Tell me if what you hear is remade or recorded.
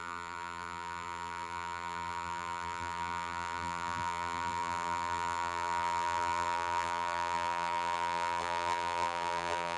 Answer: remade